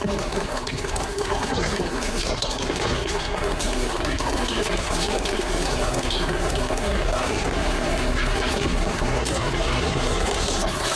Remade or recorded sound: remade